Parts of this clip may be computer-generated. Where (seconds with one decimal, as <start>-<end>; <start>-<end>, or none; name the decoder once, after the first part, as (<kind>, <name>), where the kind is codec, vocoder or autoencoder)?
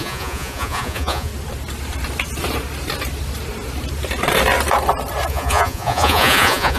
0.0-1.3 (vocoder, Vocos); 5.3-6.8